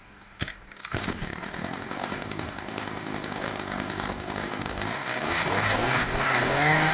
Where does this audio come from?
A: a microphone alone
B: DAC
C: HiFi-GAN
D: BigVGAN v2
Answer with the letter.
B